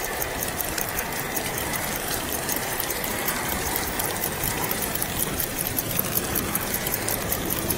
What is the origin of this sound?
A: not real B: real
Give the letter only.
A